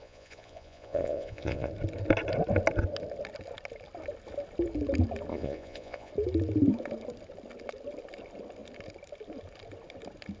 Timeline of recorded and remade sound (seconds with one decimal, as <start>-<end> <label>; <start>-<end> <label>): 0.0-1.7 remade; 1.7-5.3 recorded; 5.3-6.1 remade; 6.1-10.4 recorded